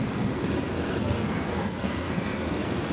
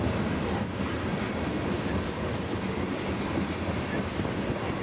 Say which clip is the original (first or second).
second